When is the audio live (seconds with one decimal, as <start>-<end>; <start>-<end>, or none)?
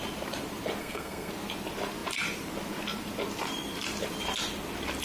0.0-0.8; 1.3-5.0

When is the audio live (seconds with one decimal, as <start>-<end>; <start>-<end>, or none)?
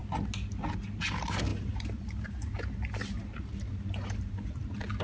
0.0-1.5; 4.5-5.0